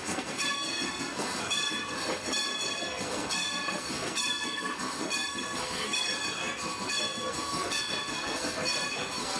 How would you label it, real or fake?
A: fake